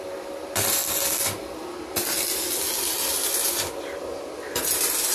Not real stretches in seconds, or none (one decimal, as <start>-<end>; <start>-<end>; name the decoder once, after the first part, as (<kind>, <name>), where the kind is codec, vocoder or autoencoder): 0.0-0.8 (vocoder, BigVGAN v2); 3.9-5.1